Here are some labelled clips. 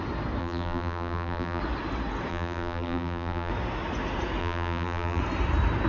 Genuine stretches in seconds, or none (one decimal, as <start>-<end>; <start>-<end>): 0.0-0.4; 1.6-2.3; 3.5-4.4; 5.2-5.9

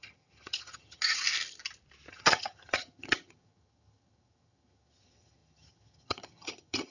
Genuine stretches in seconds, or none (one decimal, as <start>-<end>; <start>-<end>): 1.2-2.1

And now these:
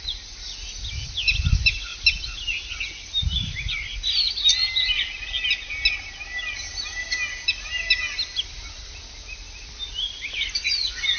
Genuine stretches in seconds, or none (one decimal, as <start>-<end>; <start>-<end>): 0.0-11.2